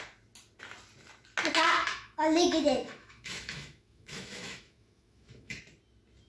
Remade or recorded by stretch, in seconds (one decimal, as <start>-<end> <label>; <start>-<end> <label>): 0.0-1.8 recorded; 1.8-5.6 remade; 5.6-6.3 recorded